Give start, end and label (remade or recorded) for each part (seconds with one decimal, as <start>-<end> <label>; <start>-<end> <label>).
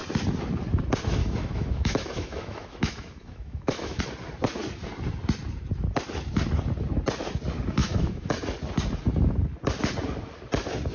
0.0-1.2 recorded; 1.2-4.0 remade; 4.0-7.8 recorded; 7.8-8.3 remade; 8.3-10.9 recorded